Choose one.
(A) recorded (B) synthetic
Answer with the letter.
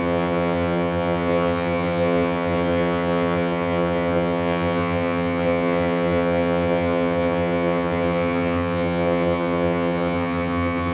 B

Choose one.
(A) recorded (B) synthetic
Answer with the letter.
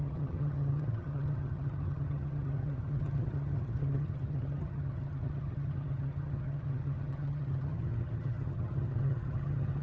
B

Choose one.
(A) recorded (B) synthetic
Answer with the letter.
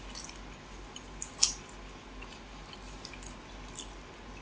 A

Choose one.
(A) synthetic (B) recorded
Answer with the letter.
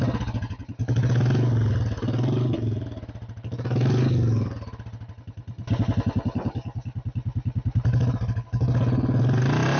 B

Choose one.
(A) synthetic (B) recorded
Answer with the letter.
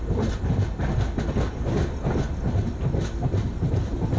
B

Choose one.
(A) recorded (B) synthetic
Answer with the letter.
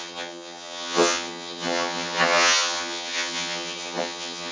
B